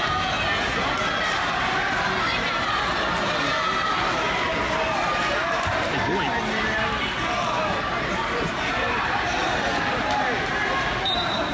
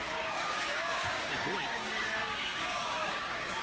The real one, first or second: first